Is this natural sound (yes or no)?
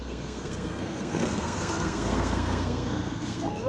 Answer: no